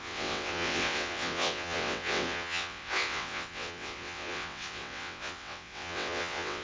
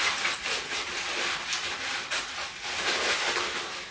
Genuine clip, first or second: second